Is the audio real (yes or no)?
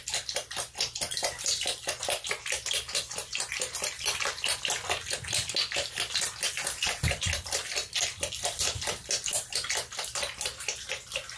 yes